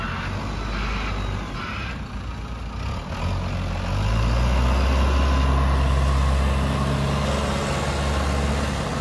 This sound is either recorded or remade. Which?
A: recorded